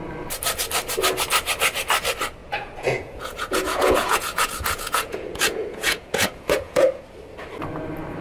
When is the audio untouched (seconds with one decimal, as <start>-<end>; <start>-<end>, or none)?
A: 0.0-2.4; 7.0-8.2